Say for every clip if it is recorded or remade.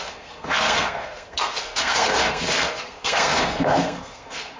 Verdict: remade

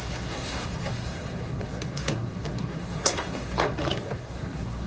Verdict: remade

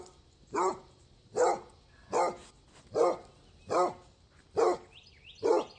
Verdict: recorded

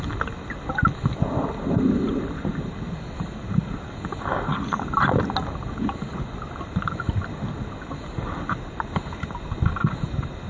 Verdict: recorded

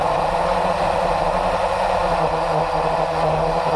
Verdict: recorded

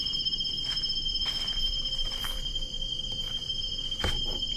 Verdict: remade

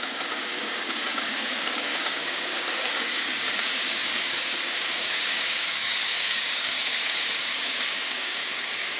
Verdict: remade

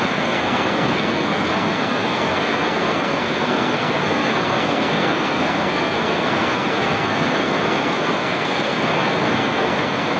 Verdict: remade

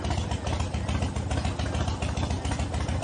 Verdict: recorded